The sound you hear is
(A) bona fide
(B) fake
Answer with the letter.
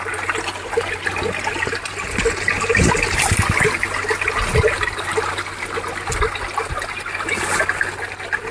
A